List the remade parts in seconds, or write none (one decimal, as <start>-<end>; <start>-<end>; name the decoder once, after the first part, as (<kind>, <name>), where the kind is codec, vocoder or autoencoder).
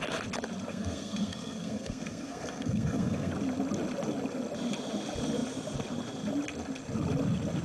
0.7-3.3 (codec, SNAC)